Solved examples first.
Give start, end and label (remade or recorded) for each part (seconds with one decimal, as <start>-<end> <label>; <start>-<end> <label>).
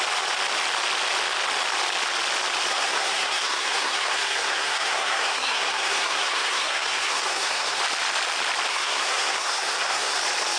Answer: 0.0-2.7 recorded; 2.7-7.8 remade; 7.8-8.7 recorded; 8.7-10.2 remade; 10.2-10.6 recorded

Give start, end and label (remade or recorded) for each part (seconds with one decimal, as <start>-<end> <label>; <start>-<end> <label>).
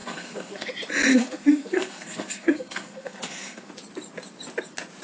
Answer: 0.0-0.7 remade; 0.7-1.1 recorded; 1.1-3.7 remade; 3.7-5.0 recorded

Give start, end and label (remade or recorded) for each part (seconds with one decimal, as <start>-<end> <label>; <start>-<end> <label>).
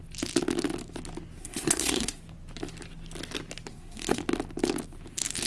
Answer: 0.0-1.4 recorded; 1.4-2.2 remade; 2.2-3.7 recorded; 3.7-4.2 remade; 4.2-5.5 recorded